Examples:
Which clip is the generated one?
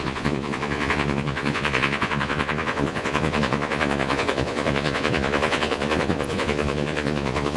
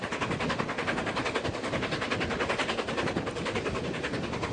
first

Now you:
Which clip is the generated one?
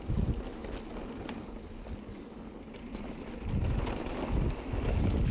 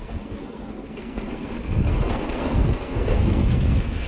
second